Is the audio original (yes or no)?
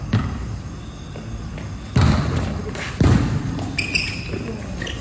yes